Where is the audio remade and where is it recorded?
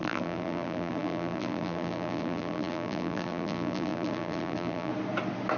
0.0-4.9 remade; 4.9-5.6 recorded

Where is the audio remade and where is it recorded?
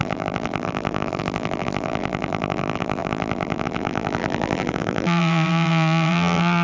0.0-6.6 remade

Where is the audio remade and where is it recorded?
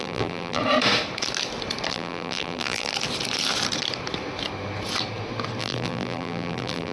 0.0-0.6 remade; 0.6-1.9 recorded; 1.9-2.9 remade; 2.9-5.6 recorded; 5.6-6.9 remade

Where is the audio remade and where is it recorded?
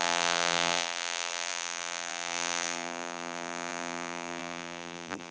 0.0-5.3 remade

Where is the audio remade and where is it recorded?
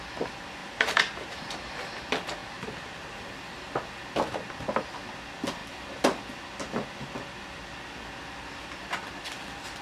0.0-0.6 recorded; 0.6-2.0 remade; 2.0-2.4 recorded; 2.4-3.1 remade; 3.1-9.8 recorded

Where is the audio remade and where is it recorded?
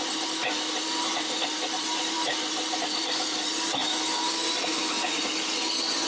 0.0-3.8 remade; 3.8-6.1 recorded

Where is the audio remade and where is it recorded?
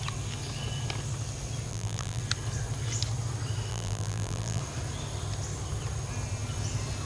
0.0-1.7 recorded; 1.7-2.2 remade; 2.2-3.7 recorded; 3.7-4.6 remade; 4.6-7.1 recorded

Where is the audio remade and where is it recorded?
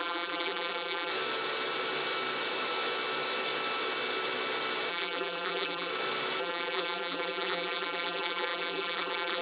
0.0-1.1 remade; 1.1-4.9 recorded; 4.9-5.9 remade; 5.9-6.4 recorded; 6.4-9.4 remade